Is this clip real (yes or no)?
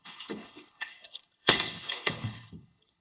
no